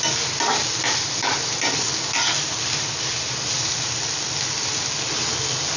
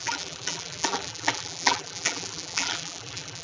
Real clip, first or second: first